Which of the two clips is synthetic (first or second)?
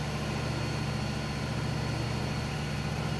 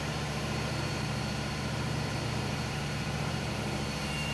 second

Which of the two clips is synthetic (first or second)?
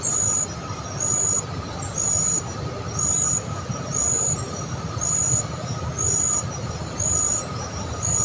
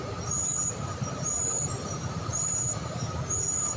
second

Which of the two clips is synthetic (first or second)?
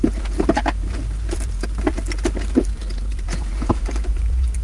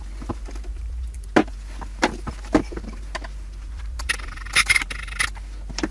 first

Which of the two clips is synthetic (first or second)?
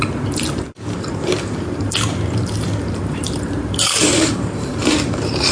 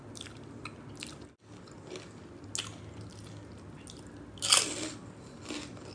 first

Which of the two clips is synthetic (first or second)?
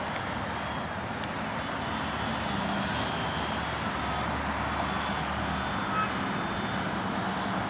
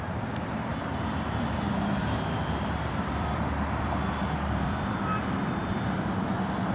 second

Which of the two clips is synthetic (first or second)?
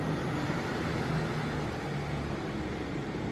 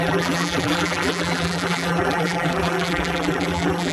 second